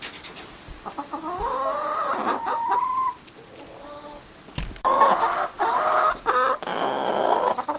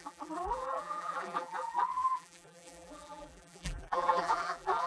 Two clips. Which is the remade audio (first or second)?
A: second